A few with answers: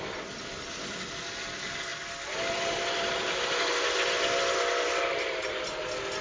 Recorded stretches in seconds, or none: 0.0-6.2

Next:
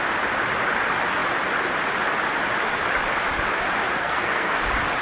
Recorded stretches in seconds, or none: 0.0-4.0; 4.6-5.0

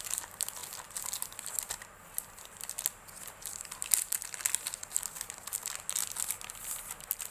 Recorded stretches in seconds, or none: 0.0-7.3